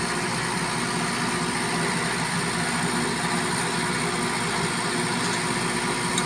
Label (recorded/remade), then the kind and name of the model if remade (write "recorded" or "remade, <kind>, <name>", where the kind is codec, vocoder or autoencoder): recorded